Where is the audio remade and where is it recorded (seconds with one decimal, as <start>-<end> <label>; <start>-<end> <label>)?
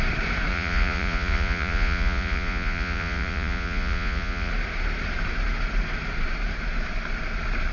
0.0-0.5 recorded; 0.5-4.5 remade; 4.5-7.7 recorded